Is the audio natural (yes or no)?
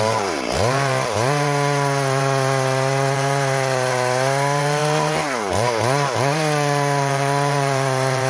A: no